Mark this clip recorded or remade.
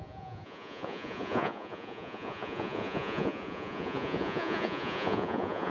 remade